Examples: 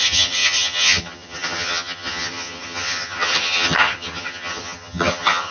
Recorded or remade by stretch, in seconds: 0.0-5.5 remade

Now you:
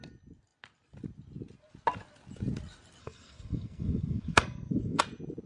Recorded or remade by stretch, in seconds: 0.0-3.0 recorded; 3.0-5.0 remade; 5.0-5.5 recorded

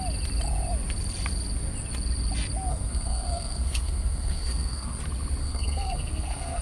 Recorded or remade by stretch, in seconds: 0.0-2.7 recorded; 2.7-5.0 remade; 5.0-5.4 recorded; 5.4-6.6 remade

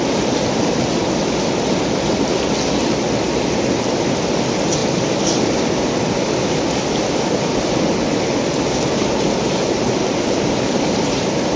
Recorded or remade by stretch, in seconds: 0.0-11.6 recorded

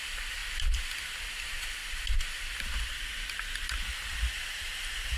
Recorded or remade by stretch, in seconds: 0.0-0.4 remade; 0.4-1.2 recorded; 1.2-1.8 remade; 1.8-3.9 recorded; 3.9-5.2 remade

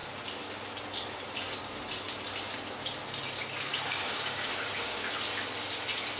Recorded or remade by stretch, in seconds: 0.0-3.7 recorded; 3.7-5.1 remade; 5.1-6.2 recorded